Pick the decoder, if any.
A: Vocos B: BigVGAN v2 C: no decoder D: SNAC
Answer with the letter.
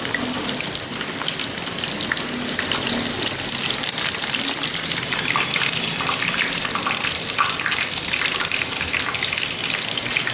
C